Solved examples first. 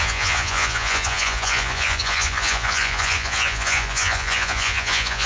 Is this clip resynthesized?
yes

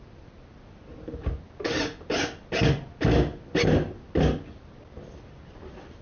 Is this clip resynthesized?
no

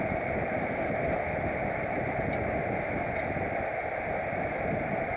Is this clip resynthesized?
no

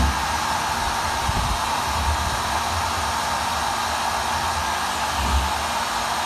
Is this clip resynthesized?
no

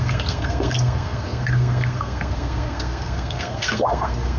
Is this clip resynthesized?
yes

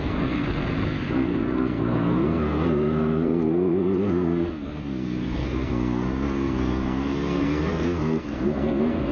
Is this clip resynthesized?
yes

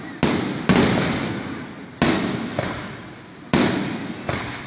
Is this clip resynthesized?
no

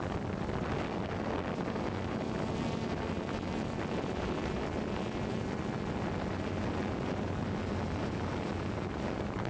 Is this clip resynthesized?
no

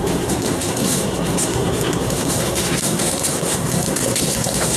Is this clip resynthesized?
yes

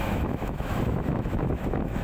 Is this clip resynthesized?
yes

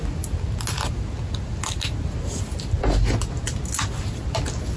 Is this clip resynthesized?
no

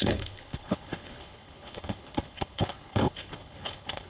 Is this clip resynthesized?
yes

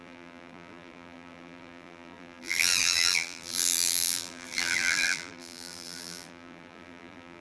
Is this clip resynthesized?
yes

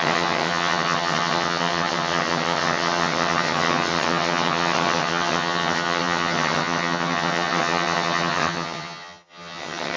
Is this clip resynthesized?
yes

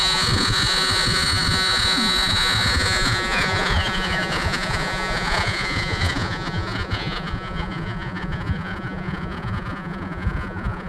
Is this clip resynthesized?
yes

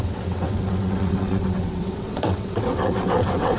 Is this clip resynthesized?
yes